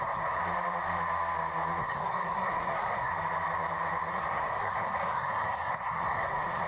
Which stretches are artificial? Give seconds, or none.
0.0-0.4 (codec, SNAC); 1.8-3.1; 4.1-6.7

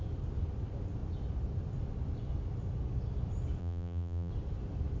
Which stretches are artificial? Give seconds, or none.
3.6-4.3 (vocoder, BigVGAN v2)